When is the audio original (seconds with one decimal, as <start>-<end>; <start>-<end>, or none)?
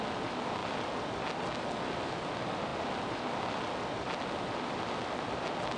0.0-5.8